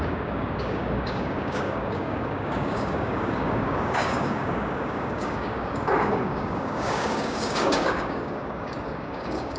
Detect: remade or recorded remade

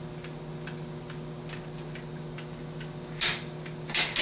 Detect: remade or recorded recorded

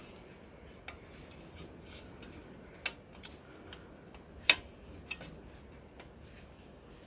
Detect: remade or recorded recorded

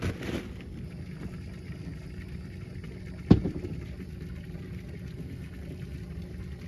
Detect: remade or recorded recorded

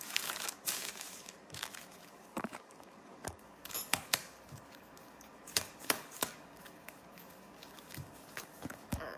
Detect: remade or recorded remade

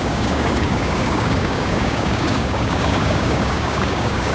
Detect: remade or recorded remade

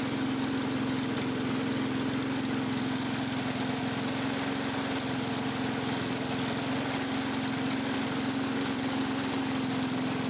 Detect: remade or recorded recorded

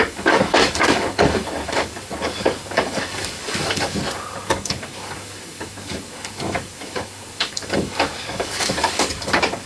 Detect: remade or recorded remade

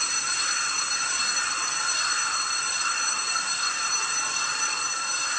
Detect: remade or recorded recorded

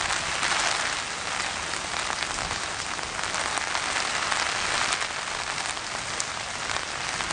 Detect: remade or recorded recorded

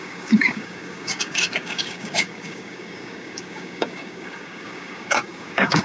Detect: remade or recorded remade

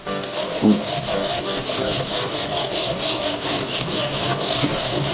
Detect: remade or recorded remade